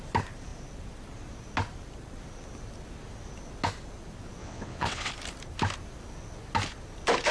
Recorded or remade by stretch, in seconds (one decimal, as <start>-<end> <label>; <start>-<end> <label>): 0.0-4.4 recorded; 4.4-5.1 remade; 5.1-7.3 recorded